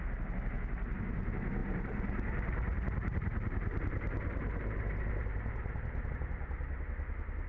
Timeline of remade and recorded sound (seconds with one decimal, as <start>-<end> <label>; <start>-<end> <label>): 0.0-1.6 recorded; 1.6-6.1 remade; 6.1-7.5 recorded